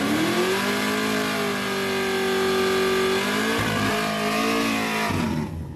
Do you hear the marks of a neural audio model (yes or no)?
no